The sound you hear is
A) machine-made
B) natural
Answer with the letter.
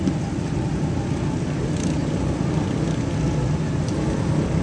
B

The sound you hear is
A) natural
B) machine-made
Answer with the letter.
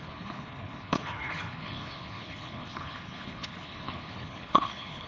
B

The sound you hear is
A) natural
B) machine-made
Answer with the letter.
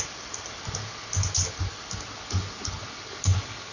A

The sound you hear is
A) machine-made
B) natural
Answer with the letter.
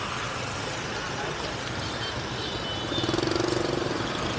B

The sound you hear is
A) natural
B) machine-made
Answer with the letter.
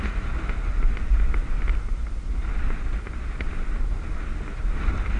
A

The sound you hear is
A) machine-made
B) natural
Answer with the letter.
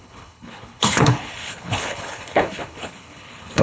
A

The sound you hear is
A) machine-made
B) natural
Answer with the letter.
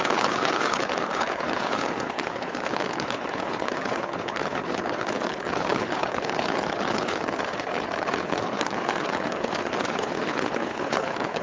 A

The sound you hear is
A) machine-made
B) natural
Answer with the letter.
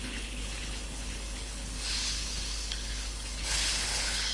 A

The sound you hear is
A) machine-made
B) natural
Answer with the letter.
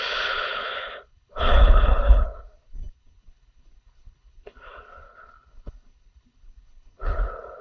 A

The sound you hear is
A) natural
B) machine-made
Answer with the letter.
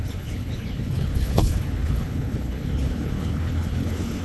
B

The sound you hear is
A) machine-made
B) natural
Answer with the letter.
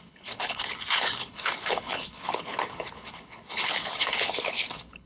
A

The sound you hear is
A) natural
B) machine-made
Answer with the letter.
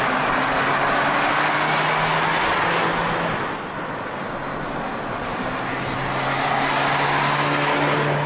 A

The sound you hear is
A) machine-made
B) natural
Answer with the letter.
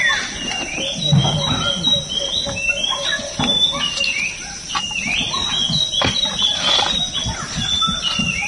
B